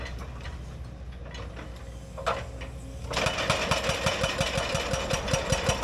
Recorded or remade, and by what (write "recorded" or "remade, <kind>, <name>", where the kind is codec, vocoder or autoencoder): recorded